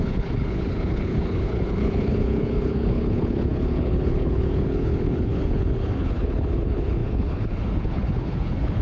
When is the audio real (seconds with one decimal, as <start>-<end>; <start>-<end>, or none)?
none